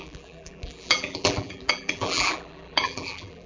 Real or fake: fake